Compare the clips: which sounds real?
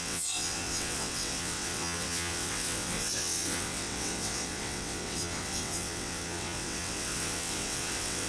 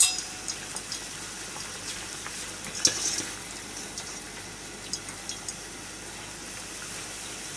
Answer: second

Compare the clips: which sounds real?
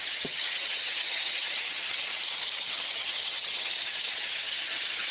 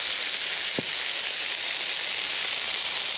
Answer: second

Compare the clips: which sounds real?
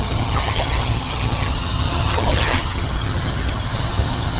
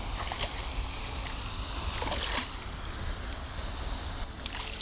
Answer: second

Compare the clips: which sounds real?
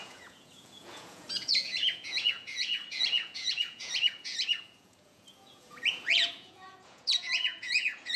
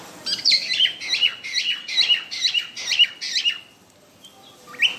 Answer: second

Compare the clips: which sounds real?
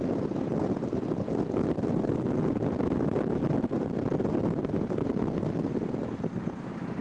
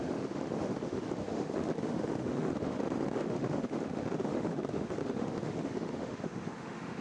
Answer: first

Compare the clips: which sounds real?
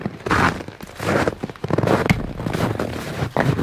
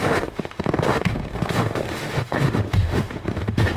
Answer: first